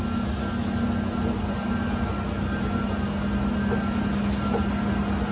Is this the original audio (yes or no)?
yes